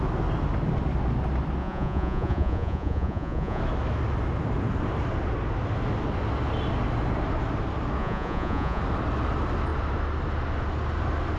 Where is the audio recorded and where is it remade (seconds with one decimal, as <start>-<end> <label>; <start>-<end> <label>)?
0.0-1.6 recorded; 1.6-3.6 remade; 3.6-8.0 recorded; 8.0-8.8 remade; 8.8-11.4 recorded